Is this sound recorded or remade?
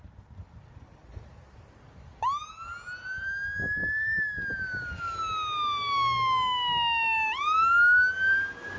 recorded